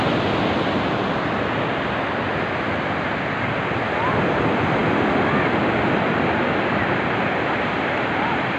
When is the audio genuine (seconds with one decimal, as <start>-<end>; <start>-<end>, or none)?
0.0-8.6